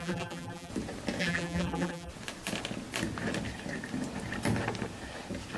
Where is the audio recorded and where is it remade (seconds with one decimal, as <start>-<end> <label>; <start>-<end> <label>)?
0.0-0.7 remade; 0.7-1.2 recorded; 1.2-2.1 remade; 2.1-5.6 recorded